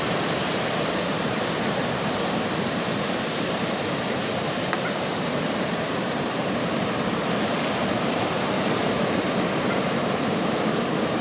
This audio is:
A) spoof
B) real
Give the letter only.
A